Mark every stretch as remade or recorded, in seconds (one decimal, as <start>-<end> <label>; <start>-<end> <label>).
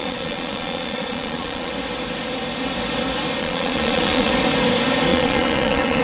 0.0-1.7 remade; 1.7-3.4 recorded; 3.4-4.3 remade; 4.3-5.1 recorded; 5.1-6.0 remade